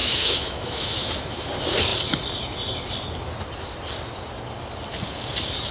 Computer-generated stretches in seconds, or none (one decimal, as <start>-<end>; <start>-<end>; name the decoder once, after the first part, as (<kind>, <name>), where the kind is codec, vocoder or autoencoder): 0.0-1.5 (autoencoder, DAC-VAE)